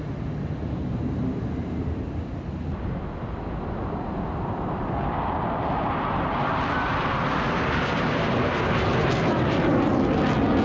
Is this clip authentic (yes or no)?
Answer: yes